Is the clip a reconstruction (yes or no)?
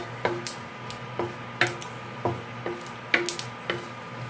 no